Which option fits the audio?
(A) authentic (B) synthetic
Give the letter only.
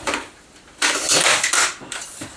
B